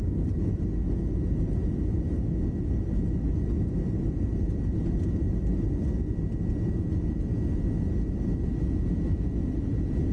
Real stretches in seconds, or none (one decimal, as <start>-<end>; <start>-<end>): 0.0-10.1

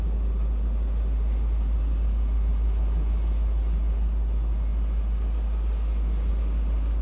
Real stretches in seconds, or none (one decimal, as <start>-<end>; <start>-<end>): 0.0-7.0

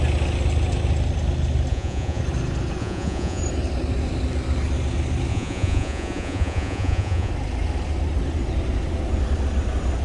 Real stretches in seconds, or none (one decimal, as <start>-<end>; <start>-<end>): 0.0-1.7; 2.2-2.8; 3.4-5.3; 7.3-10.0